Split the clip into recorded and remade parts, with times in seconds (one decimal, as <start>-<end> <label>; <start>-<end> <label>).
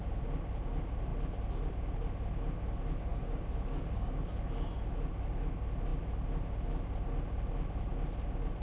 0.0-3.1 recorded; 3.1-4.2 remade; 4.2-8.6 recorded